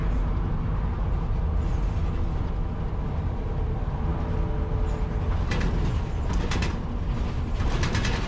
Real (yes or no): yes